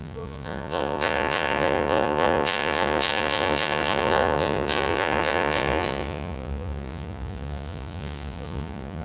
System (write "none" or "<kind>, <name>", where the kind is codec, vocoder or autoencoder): vocoder, Vocos